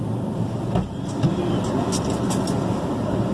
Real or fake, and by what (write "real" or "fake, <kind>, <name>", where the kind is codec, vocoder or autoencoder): real